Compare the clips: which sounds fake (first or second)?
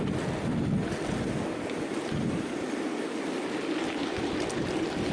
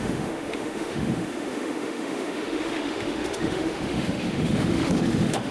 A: second